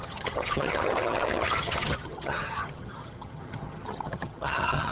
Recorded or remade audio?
remade